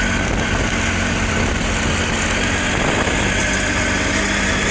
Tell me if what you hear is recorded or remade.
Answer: recorded